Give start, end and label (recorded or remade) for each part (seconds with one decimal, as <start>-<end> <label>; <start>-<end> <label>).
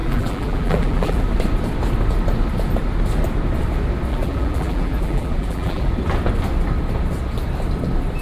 0.0-1.2 remade; 1.2-4.1 recorded; 4.1-5.9 remade; 5.9-8.2 recorded